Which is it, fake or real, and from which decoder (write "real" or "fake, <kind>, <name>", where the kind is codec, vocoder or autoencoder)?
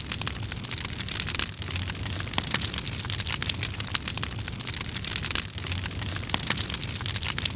real